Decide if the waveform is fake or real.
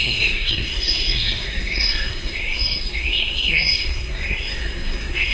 fake